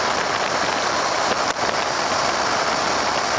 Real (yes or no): yes